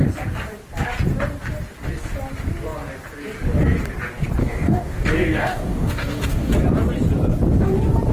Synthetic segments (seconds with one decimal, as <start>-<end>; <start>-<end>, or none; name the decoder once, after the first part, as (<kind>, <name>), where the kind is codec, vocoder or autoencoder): 4.4-6.5 (codec, DAC)